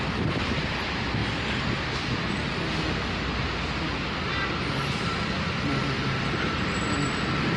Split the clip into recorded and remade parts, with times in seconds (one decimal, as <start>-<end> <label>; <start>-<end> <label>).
0.0-7.6 recorded